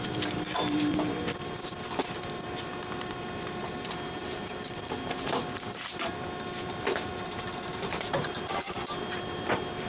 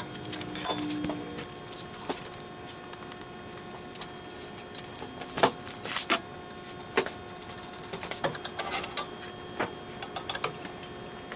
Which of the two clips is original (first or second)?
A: second